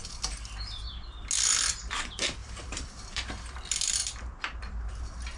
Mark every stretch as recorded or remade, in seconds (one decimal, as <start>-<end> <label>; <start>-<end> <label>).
0.0-2.4 recorded; 2.4-3.3 remade; 3.3-4.0 recorded; 4.0-4.9 remade; 4.9-5.4 recorded